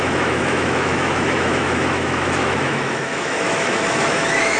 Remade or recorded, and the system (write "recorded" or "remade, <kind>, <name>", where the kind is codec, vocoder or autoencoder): remade, autoencoder, DAC-VAE